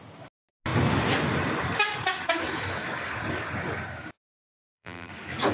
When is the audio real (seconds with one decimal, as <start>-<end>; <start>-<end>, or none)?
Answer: 0.0-4.5; 5.1-5.5